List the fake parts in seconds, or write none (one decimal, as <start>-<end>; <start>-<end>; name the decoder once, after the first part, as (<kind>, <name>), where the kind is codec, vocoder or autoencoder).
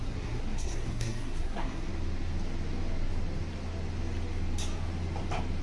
0.0-1.9 (codec, SNAC)